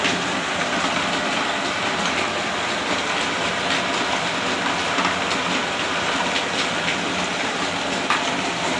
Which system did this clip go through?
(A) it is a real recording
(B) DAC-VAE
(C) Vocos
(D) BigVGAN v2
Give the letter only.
A